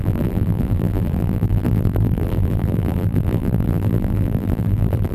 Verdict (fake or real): fake